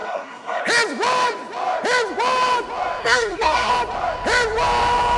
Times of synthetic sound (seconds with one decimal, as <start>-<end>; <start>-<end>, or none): 0.0-0.6; 3.0-3.7